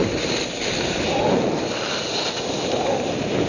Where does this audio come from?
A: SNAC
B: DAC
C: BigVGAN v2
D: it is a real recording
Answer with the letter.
D